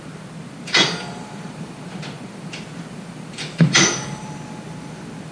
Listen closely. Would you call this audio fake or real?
fake